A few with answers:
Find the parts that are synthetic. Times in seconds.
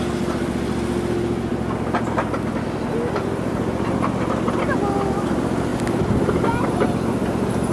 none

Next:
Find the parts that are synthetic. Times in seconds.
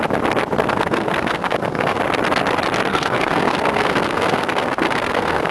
0.7-2.0 (codec, SNAC); 2.9-5.5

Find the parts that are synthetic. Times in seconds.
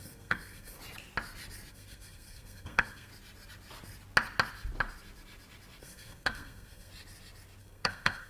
0.0-0.8 (codec, SNAC); 1.7-3.1; 5.8-6.9; 7.6-8.3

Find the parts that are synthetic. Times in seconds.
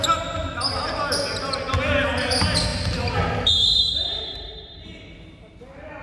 none